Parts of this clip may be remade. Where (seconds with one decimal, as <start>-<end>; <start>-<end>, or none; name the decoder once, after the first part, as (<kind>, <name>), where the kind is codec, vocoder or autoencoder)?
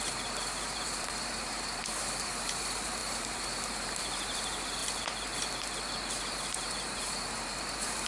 0.0-4.8 (vocoder, BigVGAN v2); 6.2-8.1